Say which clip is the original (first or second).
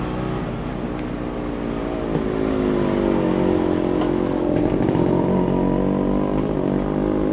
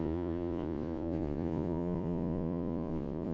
first